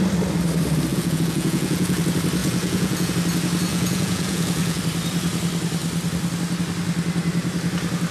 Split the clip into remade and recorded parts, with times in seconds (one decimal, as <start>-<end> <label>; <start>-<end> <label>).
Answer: 0.0-0.9 recorded; 0.9-2.0 remade; 2.0-2.4 recorded; 2.4-3.1 remade; 3.1-3.7 recorded; 3.7-4.8 remade; 4.8-8.1 recorded